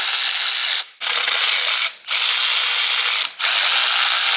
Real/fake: real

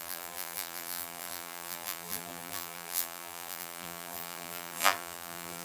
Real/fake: fake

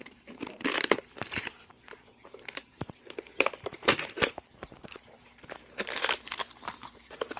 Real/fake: fake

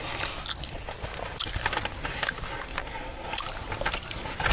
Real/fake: real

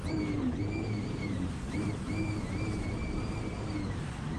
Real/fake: fake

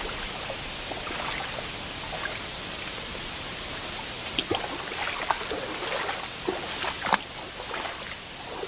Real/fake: real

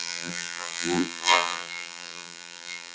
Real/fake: fake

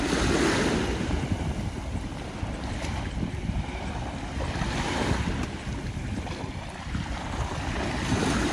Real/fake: fake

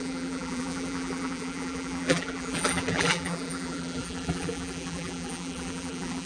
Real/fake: fake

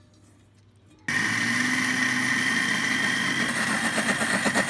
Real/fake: real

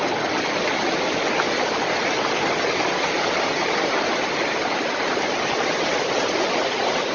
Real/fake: real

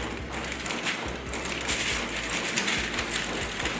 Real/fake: real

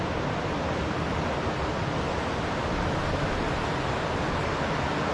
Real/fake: real